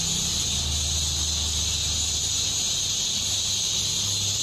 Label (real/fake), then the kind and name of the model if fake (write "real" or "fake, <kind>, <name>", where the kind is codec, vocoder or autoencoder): real